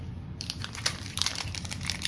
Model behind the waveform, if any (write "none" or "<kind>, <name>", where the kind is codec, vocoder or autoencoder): vocoder, BigVGAN v2